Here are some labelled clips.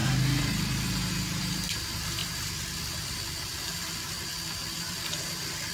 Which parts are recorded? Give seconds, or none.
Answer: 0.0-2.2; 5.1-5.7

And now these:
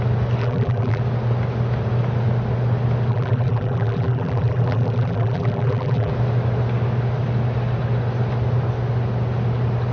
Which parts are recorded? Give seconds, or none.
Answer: 0.0-0.4; 1.0-3.1; 6.1-9.9

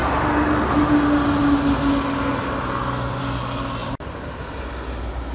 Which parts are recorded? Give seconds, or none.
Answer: 0.0-3.8; 4.7-5.3

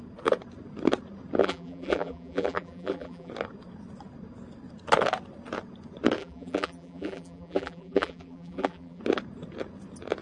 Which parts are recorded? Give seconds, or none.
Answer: 0.0-1.4; 3.3-6.2; 9.0-10.2

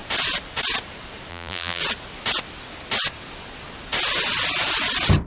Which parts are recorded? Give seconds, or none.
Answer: 0.0-1.3; 1.8-5.3